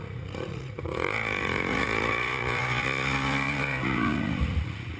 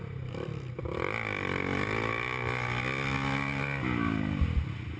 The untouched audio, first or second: second